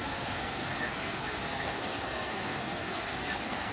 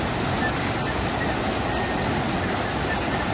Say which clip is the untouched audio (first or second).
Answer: second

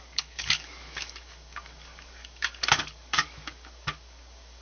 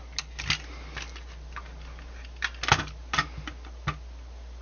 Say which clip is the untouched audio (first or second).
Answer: second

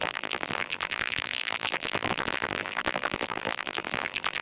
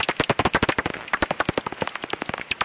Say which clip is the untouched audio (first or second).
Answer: second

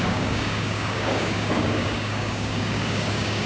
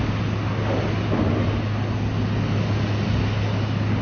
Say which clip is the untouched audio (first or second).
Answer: second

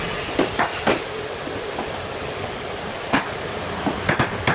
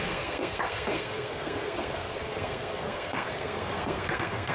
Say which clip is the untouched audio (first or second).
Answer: first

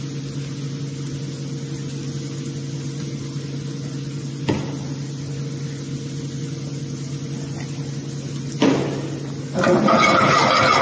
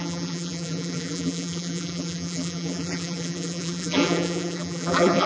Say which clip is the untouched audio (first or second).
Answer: first